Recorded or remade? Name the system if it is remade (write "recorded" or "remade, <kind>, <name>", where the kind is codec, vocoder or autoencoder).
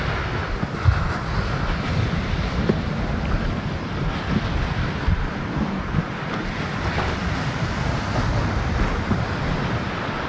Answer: recorded